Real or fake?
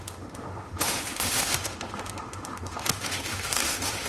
fake